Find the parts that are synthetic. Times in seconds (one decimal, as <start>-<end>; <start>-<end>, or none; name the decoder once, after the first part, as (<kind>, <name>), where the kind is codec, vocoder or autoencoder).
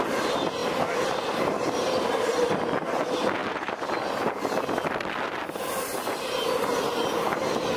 none